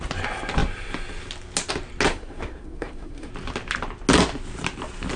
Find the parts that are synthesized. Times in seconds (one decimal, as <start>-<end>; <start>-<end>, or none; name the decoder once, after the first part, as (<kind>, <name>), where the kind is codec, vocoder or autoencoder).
2.1-3.3 (codec, SNAC)